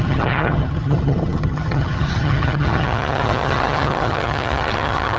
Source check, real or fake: fake